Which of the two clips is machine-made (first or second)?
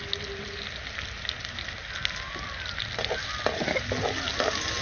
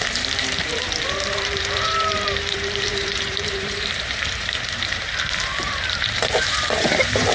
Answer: second